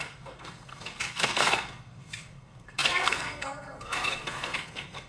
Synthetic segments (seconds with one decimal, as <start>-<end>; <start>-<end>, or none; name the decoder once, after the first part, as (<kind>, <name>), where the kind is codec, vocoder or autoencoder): 0.0-5.1 (codec, SNAC)